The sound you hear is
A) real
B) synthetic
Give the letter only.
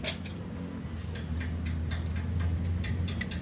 A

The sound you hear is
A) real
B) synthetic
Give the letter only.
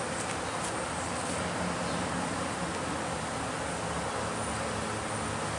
A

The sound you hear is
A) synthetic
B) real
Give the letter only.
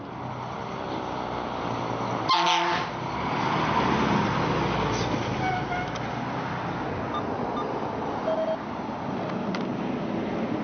B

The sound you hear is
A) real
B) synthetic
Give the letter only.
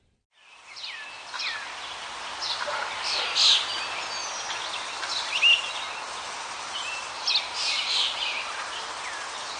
A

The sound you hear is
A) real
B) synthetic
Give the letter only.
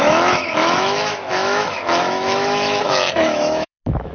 B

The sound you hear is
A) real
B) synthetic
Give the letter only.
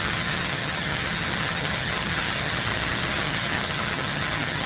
B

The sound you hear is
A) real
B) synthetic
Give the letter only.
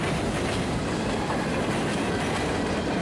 A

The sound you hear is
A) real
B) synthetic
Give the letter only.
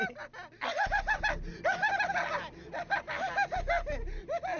A